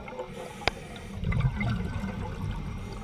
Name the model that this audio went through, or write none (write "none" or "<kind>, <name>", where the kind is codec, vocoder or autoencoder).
none